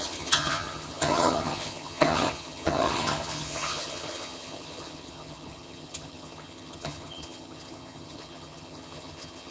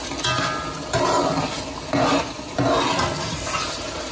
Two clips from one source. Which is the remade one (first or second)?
first